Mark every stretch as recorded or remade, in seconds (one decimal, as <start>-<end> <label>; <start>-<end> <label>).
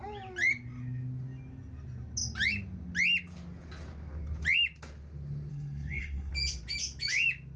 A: 0.0-5.5 recorded; 5.5-6.3 remade; 6.3-7.6 recorded